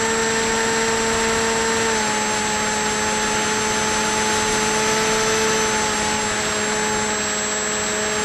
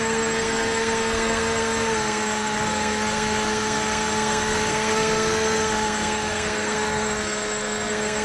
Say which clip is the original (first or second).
first